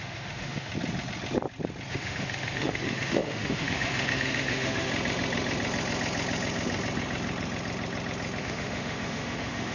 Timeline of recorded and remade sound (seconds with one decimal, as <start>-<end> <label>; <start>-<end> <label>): 0.0-0.7 remade; 0.7-1.9 recorded; 1.9-4.9 remade; 4.9-8.4 recorded; 8.4-9.7 remade